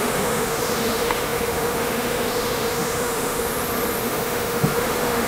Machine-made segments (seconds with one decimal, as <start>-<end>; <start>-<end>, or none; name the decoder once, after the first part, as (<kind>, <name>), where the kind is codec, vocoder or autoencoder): 0.0-3.5 (autoencoder, DAC-VAE); 4.0-5.3